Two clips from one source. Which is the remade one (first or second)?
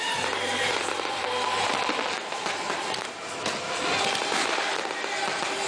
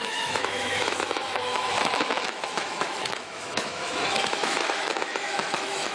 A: second